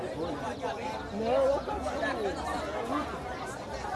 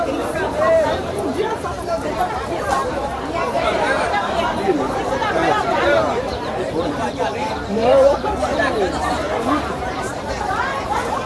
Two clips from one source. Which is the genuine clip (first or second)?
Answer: first